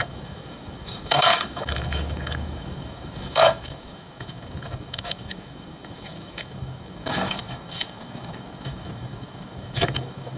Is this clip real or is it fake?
fake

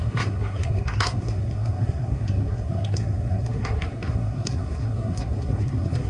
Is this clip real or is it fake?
fake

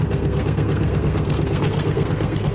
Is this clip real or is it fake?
fake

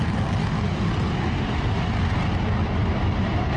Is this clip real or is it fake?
real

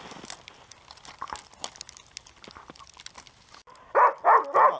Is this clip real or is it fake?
real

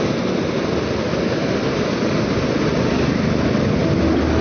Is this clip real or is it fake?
real